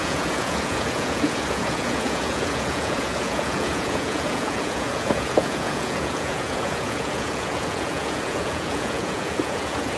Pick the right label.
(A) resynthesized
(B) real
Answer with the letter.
A